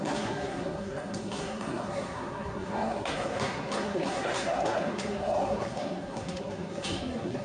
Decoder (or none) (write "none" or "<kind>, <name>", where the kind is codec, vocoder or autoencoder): codec, SNAC